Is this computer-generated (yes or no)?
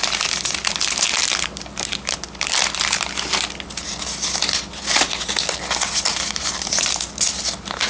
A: no